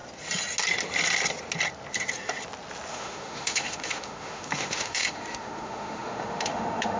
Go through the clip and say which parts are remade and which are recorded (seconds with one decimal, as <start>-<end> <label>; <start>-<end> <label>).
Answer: 0.0-2.9 recorded; 2.9-7.0 remade